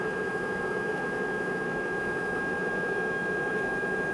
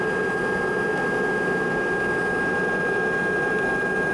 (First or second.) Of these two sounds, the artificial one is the first